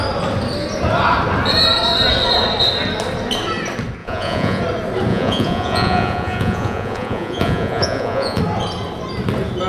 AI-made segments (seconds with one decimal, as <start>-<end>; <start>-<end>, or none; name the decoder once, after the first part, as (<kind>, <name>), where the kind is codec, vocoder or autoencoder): 4.0-4.6 (vocoder, Vocos); 5.1-8.4